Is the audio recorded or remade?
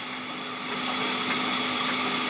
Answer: recorded